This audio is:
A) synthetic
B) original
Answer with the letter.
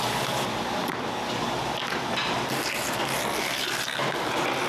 B